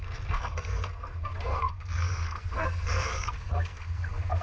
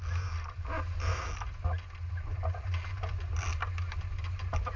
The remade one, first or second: first